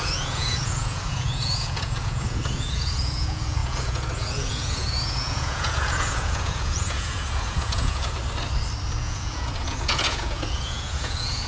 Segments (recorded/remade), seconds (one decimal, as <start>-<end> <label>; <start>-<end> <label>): 0.0-8.2 remade; 8.2-9.0 recorded; 9.0-11.5 remade